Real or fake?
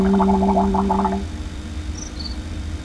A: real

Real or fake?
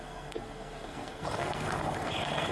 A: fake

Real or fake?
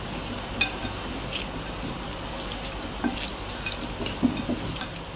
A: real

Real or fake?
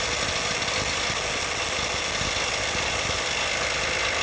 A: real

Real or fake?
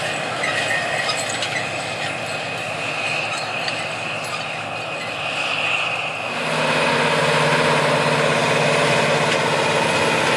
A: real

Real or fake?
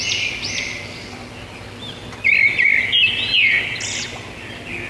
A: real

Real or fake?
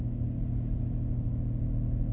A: real